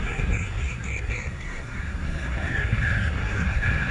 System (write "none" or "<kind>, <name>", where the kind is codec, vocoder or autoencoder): codec, SNAC